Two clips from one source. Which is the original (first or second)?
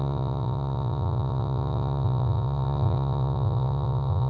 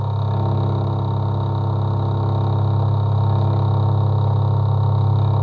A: second